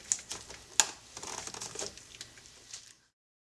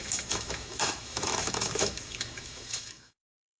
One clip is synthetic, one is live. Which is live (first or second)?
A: first